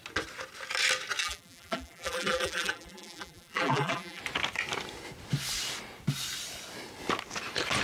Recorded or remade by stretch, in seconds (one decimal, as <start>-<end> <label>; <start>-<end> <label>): 0.0-1.2 recorded; 1.2-4.2 remade; 4.2-7.8 recorded

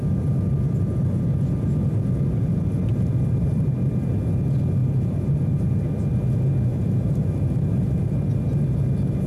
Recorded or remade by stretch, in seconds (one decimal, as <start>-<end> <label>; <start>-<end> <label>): 0.0-2.9 recorded; 2.9-4.0 remade; 4.0-4.8 recorded; 4.8-5.7 remade; 5.7-6.7 recorded; 6.7-8.1 remade; 8.1-9.3 recorded

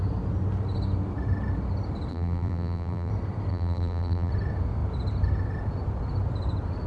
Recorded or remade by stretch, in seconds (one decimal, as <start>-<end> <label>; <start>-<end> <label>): 0.0-2.1 recorded; 2.1-3.1 remade; 3.1-3.5 recorded; 3.5-4.3 remade; 4.3-6.9 recorded

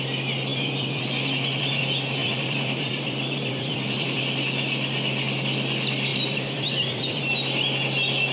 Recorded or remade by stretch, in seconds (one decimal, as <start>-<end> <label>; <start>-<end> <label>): 0.0-0.5 recorded; 0.5-1.8 remade; 1.8-2.2 recorded; 2.2-4.2 remade; 4.2-6.1 recorded; 6.1-7.2 remade; 7.2-8.3 recorded